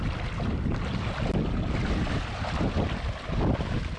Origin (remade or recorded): recorded